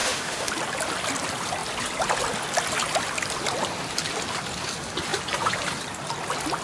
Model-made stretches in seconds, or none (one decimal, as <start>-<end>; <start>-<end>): 0.0-0.5